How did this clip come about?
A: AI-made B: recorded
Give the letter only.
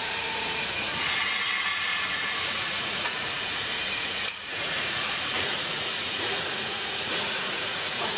A